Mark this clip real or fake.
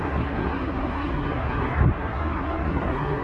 fake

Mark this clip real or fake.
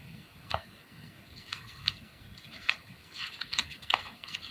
fake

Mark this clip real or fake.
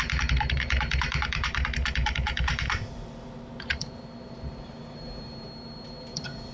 fake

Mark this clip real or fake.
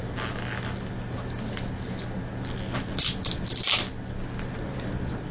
real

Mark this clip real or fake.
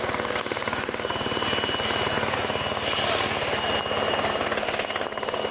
real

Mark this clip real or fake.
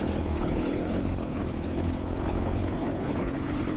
fake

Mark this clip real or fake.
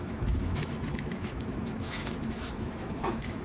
fake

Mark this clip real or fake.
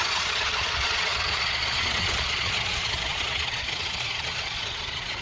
fake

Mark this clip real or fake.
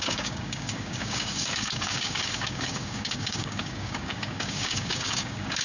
fake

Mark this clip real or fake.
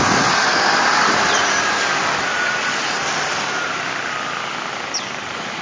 real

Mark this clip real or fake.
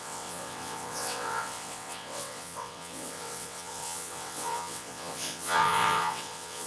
fake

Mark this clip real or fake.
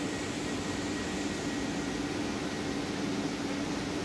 real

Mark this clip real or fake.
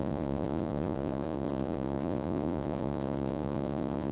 fake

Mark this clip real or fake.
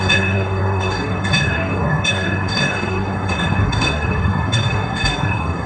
fake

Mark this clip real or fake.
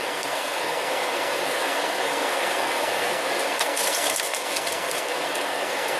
fake